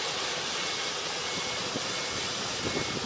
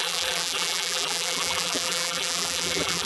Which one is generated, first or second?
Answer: second